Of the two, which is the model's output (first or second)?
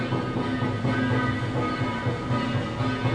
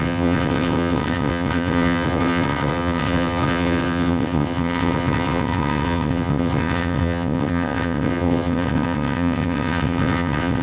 second